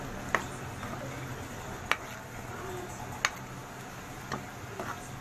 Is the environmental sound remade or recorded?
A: recorded